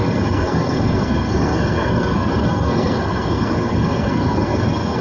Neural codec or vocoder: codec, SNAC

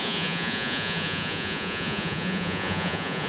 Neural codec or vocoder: vocoder, Vocos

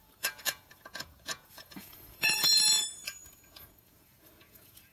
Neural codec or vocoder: vocoder, Vocos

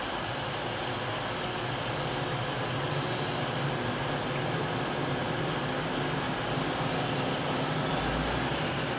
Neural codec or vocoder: none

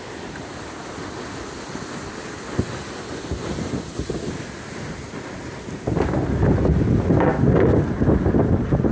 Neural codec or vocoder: none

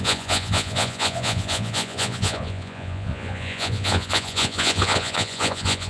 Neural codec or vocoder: vocoder, Vocos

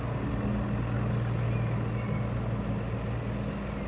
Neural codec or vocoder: none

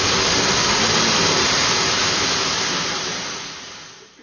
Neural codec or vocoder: none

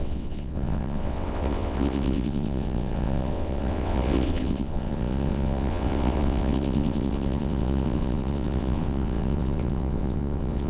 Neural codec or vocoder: vocoder, WaveNeXt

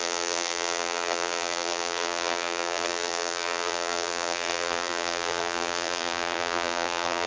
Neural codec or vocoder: vocoder, BigVGAN v2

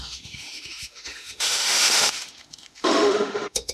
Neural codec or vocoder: autoencoder, DAC-VAE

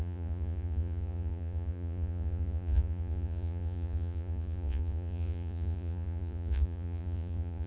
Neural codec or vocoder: vocoder, Vocos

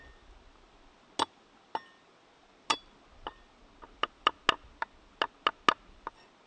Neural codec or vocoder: none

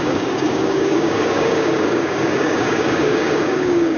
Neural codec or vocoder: codec, DAC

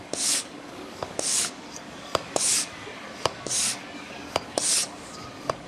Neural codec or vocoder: codec, DAC